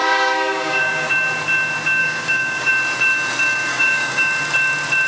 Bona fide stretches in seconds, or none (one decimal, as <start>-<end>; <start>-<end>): 1.1-2.0; 2.7-3.7; 4.3-5.1